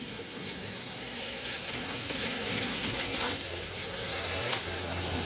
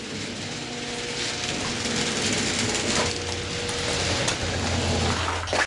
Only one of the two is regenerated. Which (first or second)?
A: first